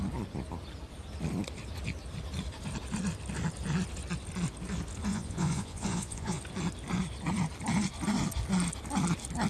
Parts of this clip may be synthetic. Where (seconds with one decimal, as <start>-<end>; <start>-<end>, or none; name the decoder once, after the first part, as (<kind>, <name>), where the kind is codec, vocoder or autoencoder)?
5.1-6.4 (vocoder, Vocos)